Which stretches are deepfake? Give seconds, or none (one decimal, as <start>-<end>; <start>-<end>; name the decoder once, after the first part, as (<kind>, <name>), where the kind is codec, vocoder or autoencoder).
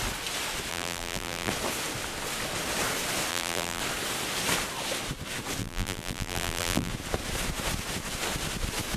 0.7-1.5 (vocoder, BigVGAN v2); 3.3-3.8; 5.6-6.9